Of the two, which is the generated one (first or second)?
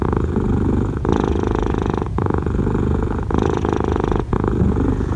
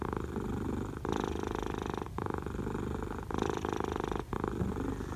first